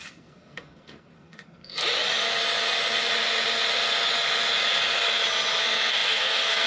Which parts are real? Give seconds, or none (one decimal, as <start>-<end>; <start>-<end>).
1.8-5.6